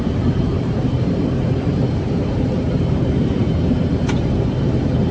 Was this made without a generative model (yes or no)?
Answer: no